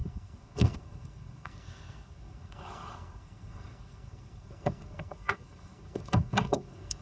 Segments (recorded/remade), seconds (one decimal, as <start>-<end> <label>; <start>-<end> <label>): 0.0-7.0 remade